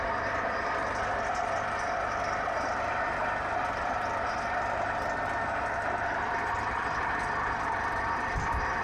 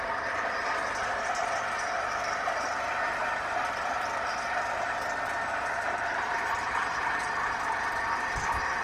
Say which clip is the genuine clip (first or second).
first